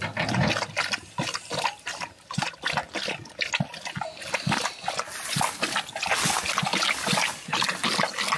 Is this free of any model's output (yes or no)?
yes